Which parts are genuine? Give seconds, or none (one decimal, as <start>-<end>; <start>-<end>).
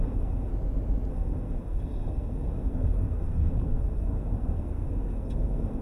0.5-1.1